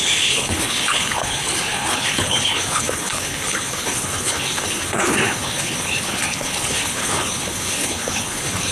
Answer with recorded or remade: remade